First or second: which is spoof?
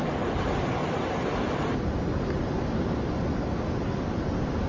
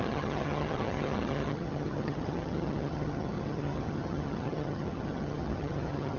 second